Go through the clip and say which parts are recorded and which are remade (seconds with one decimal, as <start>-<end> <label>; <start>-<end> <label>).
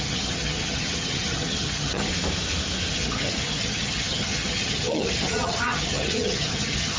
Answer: 0.0-2.1 remade; 2.1-2.9 recorded; 2.9-7.0 remade